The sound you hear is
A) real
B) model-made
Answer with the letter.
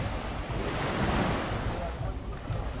A